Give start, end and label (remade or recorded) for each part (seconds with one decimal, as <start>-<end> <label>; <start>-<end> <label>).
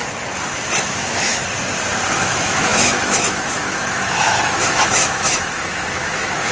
0.0-0.8 recorded; 0.8-1.4 remade; 1.4-2.1 recorded; 2.1-6.5 remade